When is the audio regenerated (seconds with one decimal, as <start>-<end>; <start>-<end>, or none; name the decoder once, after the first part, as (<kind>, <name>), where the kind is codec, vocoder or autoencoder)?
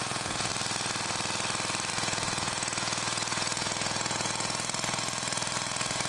0.0-0.5 (vocoder, Vocos); 1.9-6.1